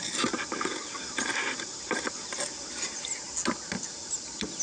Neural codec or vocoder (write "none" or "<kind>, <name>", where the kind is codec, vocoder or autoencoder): none